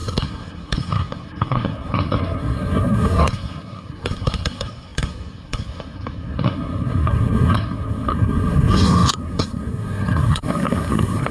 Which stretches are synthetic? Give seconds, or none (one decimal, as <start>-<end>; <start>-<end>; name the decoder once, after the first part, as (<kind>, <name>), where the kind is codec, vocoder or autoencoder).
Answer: 0.0-11.3 (codec, SNAC)